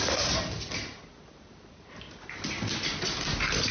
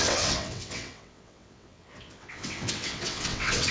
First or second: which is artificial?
second